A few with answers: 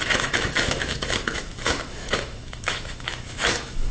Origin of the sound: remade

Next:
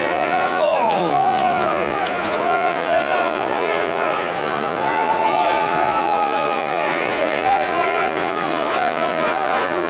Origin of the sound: remade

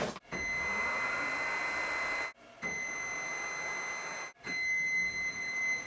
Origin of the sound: recorded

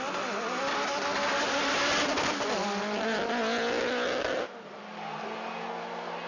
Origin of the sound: recorded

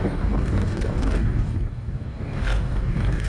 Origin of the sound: remade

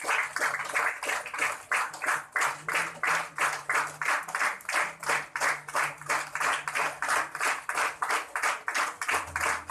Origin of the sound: recorded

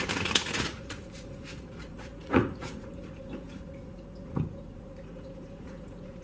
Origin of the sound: remade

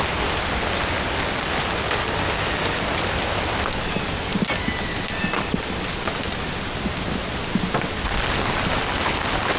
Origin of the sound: recorded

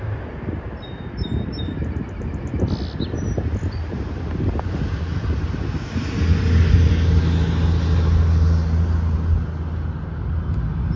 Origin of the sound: recorded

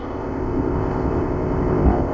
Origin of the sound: remade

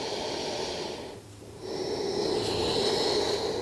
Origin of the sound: recorded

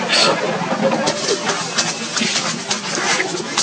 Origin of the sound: recorded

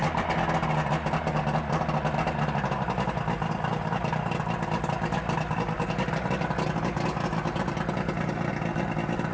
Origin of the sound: recorded